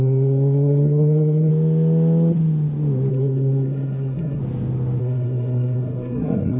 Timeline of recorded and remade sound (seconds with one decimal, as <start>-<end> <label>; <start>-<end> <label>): 0.0-1.5 remade; 1.5-3.1 recorded; 3.1-4.4 remade; 4.4-5.0 recorded; 5.0-6.6 remade